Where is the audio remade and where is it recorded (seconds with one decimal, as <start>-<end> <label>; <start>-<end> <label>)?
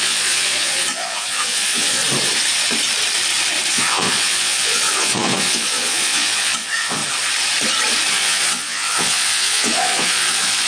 0.0-2.0 remade; 2.0-3.7 recorded; 3.7-7.0 remade; 7.0-8.1 recorded; 8.1-10.7 remade